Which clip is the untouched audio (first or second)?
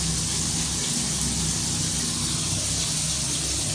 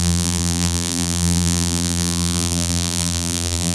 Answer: first